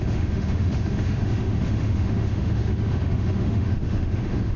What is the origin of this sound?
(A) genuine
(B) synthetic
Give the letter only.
B